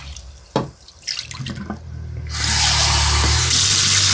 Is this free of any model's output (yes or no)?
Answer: yes